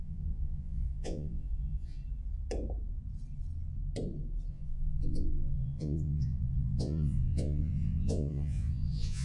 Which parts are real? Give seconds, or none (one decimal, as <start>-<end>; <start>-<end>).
2.0-4.5